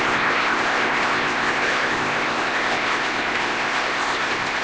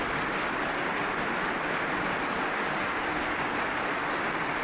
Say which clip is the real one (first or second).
second